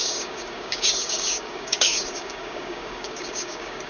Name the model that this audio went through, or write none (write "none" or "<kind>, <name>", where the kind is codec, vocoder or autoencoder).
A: codec, DAC